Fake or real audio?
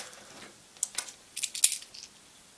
real